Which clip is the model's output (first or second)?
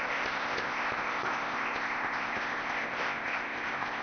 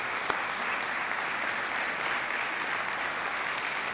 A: first